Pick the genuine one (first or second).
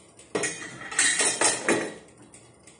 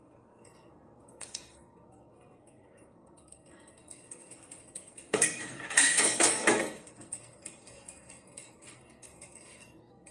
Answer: first